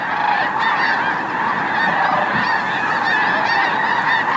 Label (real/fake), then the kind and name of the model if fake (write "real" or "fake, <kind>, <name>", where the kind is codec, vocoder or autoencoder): real